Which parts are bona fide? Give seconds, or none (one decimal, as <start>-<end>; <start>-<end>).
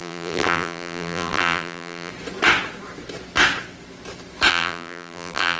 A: 2.1-4.5